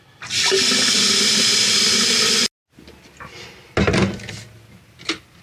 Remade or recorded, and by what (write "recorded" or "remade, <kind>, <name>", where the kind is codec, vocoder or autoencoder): recorded